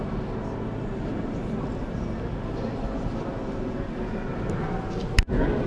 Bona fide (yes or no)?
yes